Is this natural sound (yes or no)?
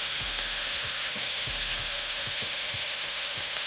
no